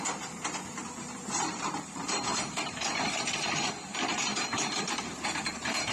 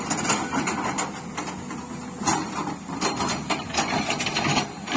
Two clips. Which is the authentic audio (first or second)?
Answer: second